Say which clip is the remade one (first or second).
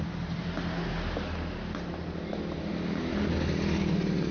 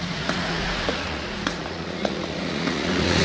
second